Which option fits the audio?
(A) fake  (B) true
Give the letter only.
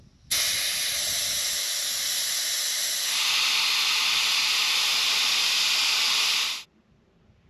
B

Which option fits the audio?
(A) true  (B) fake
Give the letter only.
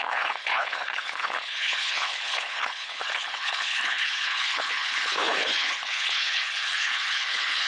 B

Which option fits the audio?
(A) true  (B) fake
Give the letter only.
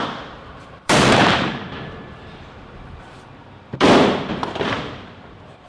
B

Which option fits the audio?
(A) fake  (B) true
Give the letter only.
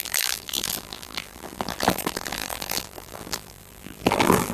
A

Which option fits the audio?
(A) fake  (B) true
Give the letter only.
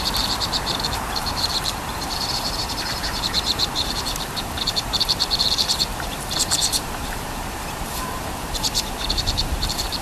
A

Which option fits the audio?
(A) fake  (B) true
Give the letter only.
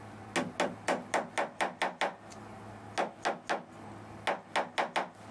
B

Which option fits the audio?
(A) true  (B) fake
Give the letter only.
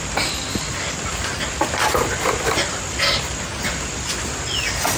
A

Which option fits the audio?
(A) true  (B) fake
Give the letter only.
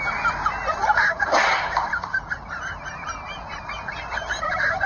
B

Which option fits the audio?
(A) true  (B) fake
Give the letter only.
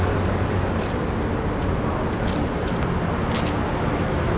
A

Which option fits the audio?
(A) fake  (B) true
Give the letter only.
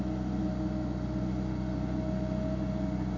B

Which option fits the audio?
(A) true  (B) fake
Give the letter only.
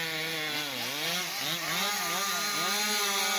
A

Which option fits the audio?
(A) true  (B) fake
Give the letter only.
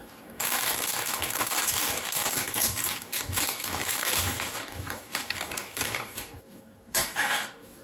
B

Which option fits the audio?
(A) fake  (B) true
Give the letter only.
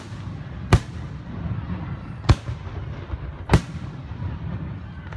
A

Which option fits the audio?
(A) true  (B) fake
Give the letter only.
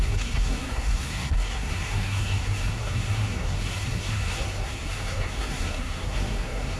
B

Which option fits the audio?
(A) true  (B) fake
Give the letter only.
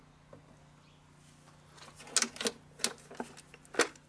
A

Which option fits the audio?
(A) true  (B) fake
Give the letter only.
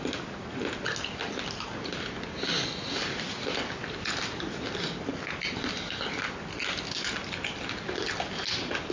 A